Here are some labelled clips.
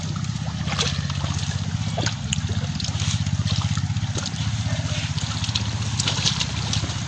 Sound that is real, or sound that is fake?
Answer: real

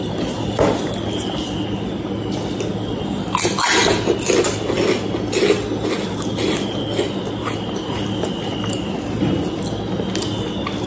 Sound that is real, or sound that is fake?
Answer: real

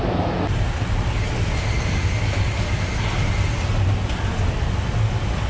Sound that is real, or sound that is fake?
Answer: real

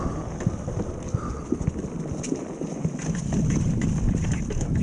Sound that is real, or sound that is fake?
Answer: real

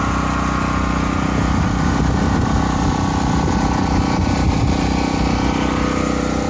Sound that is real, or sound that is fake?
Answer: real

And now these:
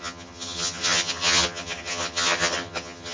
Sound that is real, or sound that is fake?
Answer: fake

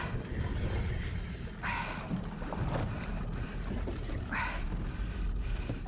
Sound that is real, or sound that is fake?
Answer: real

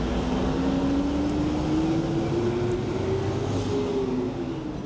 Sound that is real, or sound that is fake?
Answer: real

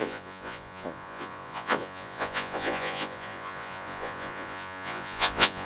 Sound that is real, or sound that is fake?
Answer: fake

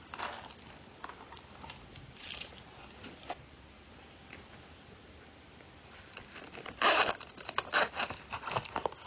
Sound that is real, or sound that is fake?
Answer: real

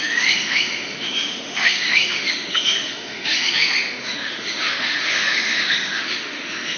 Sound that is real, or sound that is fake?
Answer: fake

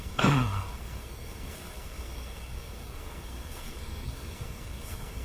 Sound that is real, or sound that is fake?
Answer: fake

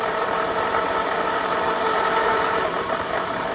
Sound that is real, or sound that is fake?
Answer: fake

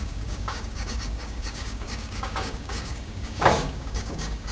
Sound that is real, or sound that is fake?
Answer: fake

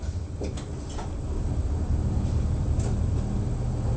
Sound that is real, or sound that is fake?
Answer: real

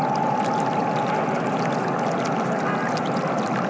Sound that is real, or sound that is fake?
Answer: real